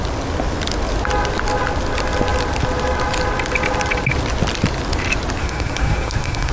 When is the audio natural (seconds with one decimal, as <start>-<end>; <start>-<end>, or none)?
0.0-5.4